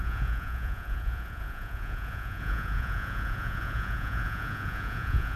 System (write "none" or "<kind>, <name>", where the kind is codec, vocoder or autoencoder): vocoder, Vocos